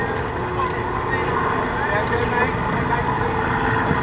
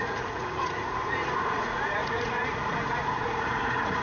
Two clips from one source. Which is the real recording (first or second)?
first